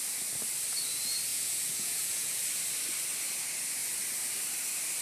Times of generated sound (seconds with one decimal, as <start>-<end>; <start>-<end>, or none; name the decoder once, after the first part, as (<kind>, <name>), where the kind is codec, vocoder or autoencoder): 1.3-2.4 (vocoder, Vocos)